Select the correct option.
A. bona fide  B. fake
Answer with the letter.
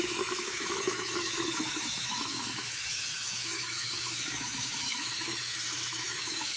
B